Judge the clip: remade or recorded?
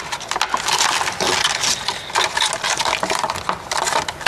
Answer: recorded